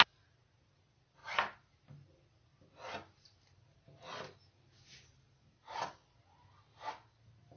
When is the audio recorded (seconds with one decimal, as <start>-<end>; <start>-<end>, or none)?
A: 0.0-7.6